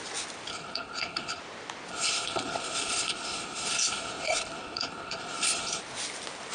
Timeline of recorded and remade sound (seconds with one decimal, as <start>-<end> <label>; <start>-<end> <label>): 0.0-0.5 recorded; 0.5-1.4 remade; 1.4-1.9 recorded; 1.9-5.8 remade; 5.8-6.5 recorded